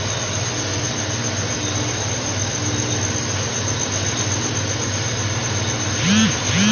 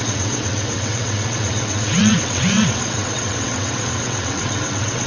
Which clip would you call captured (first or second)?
first